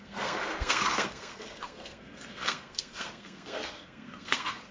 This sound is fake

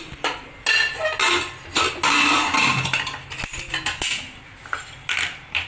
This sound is real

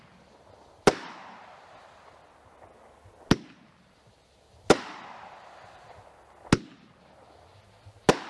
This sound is real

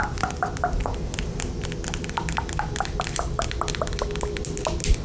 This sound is real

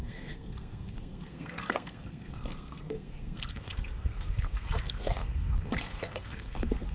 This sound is fake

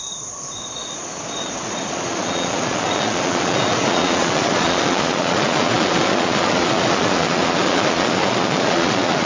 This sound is fake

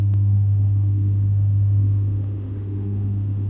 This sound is fake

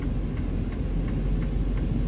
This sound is real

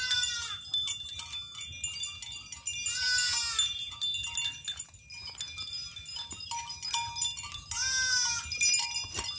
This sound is real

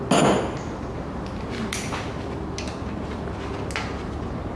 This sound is real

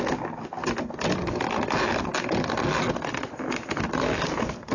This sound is real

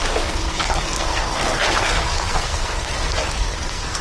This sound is fake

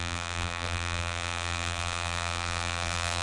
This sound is fake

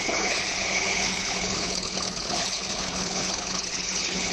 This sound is fake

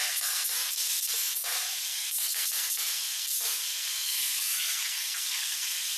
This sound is fake